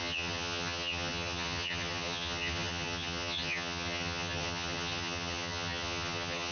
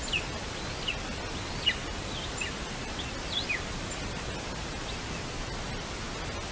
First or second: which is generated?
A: first